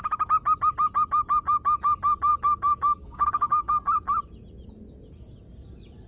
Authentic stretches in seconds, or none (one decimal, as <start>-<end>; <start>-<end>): 0.0-2.3; 3.7-6.1